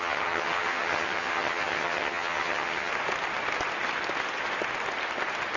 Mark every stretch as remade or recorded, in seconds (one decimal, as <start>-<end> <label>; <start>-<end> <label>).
0.0-2.9 remade; 2.9-5.6 recorded